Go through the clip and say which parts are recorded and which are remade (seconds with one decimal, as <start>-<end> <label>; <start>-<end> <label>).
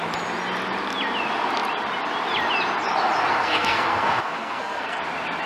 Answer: 0.0-3.3 recorded; 3.3-5.0 remade; 5.0-5.5 recorded